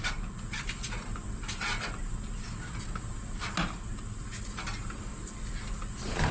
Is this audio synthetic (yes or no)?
no